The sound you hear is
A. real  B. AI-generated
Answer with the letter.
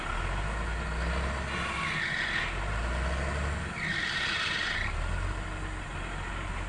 A